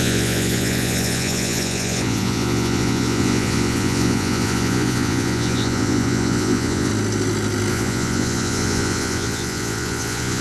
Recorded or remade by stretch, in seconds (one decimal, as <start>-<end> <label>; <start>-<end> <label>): 0.0-6.9 remade; 6.9-7.7 recorded; 7.7-10.4 remade